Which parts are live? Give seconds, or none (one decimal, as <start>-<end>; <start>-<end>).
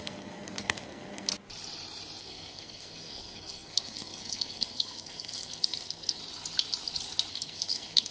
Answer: 1.3-2.2; 6.2-7.3